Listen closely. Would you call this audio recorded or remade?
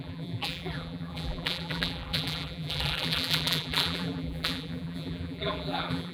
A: remade